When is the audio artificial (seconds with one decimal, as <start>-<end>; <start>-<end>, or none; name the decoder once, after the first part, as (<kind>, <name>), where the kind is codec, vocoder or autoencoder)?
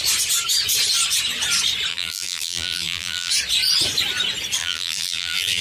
1.9-3.3 (vocoder, BigVGAN v2); 4.6-5.6